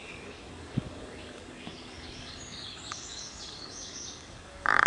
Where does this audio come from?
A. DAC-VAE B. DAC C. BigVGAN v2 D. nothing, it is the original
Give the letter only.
B